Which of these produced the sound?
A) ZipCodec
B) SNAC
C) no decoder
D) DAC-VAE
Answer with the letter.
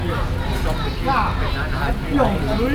C